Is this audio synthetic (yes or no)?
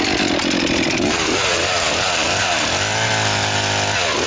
no